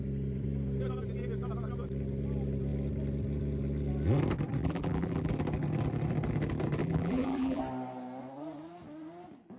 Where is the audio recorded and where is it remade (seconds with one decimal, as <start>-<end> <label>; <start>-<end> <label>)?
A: 0.0-4.6 recorded; 4.6-5.3 remade; 5.3-6.8 recorded; 6.8-7.6 remade; 7.6-9.6 recorded